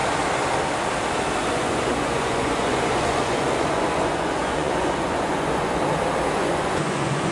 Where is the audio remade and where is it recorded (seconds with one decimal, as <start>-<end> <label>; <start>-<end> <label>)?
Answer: 0.0-1.4 recorded; 1.4-5.8 remade; 5.8-6.4 recorded; 6.4-7.3 remade